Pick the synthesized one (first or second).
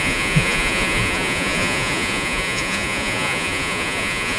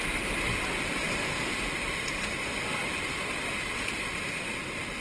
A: first